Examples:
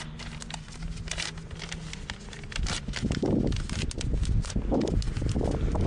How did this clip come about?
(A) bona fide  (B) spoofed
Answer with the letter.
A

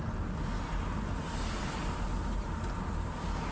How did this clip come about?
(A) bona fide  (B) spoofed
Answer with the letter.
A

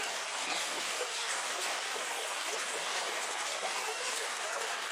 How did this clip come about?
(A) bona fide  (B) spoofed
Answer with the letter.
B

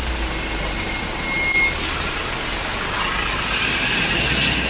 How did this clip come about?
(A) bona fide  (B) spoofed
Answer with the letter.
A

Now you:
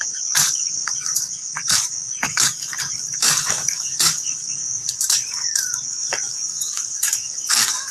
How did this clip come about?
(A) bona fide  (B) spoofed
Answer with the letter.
B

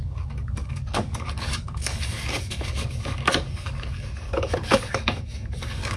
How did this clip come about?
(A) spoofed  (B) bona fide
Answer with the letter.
A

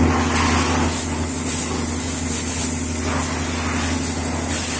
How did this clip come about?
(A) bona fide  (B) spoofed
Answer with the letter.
A